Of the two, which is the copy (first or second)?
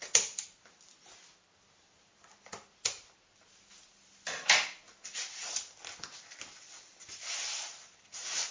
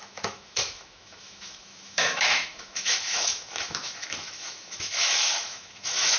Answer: second